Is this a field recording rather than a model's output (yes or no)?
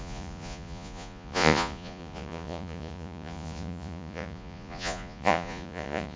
no